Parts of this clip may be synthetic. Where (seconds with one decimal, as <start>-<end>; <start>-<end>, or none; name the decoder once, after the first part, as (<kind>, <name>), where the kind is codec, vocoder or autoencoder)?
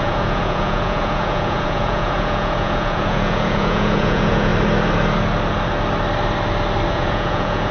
0.0-4.5 (vocoder, Vocos); 6.9-7.7